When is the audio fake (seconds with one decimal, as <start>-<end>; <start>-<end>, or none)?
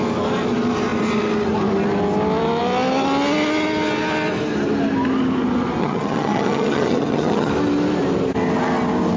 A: 5.8-7.5